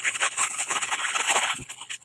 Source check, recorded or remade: remade